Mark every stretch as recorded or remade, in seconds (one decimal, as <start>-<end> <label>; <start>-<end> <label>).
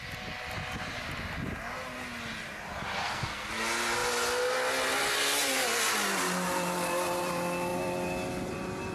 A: 0.0-3.0 recorded; 3.0-3.5 remade; 3.5-8.9 recorded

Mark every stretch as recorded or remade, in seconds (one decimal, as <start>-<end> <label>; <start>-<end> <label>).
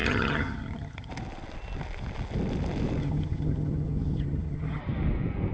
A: 0.0-1.1 remade; 1.1-3.0 recorded; 3.0-4.8 remade; 4.8-5.5 recorded